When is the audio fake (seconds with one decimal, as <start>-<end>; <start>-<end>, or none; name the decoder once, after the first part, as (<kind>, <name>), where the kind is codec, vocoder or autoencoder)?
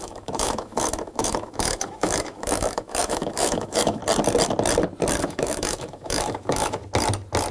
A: 0.0-4.0 (autoencoder, DAC-VAE); 5.2-6.8